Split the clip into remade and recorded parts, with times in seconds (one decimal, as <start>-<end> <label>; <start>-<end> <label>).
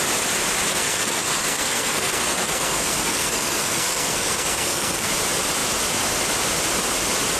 0.0-0.7 recorded; 0.7-5.1 remade; 5.1-7.4 recorded